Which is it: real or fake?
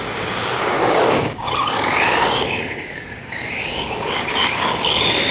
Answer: fake